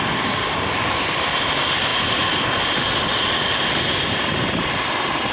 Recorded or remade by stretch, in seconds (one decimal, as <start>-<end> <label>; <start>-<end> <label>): 0.0-5.3 recorded

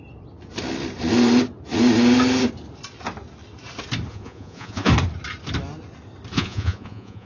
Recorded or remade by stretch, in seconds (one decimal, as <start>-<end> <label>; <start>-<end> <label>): 0.0-4.1 recorded; 4.1-4.9 remade; 4.9-6.3 recorded; 6.3-7.3 remade

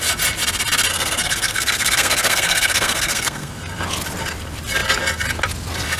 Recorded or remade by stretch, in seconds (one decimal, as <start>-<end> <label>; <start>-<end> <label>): 0.0-0.9 recorded; 0.9-3.5 remade; 3.5-6.0 recorded

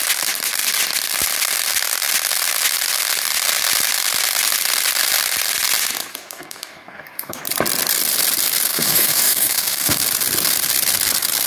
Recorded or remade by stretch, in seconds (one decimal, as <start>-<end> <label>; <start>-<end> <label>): 0.0-6.1 recorded; 6.1-7.4 remade; 7.4-8.7 recorded; 8.7-10.0 remade; 10.0-11.5 recorded

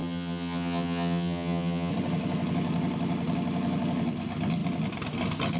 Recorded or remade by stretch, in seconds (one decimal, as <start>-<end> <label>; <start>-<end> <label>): 0.0-1.9 remade; 1.9-5.6 recorded

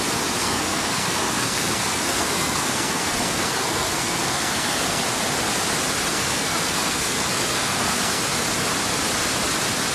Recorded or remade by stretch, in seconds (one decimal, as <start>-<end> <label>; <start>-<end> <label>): 0.0-0.4 recorded; 0.4-5.0 remade; 5.0-6.1 recorded; 6.1-8.2 remade; 8.2-9.9 recorded

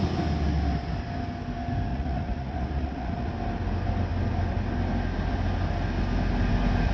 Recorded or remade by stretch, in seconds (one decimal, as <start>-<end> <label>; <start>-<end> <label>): 0.0-1.9 recorded; 1.9-3.3 remade; 3.3-6.9 recorded

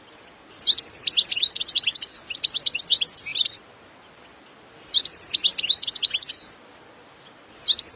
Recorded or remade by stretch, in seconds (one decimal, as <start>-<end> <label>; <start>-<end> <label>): 0.0-8.0 recorded